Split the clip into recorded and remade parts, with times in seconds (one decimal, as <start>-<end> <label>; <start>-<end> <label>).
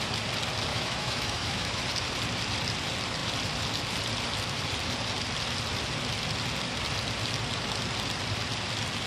0.0-0.7 recorded; 0.7-1.8 remade; 1.8-9.1 recorded